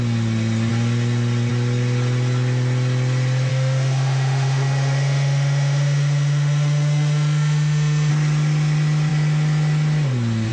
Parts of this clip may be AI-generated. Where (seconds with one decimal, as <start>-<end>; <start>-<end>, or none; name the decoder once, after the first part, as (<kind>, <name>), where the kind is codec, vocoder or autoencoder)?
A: 3.5-8.1 (autoencoder, DAC-VAE)